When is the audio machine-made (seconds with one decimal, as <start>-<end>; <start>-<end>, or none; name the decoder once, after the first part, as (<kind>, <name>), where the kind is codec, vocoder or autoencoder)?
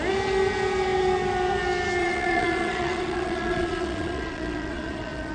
2.0-5.3 (vocoder, Vocos)